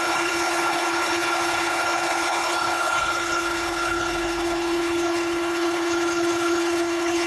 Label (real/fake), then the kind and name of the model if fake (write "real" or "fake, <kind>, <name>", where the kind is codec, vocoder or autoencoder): fake, codec, HILCodec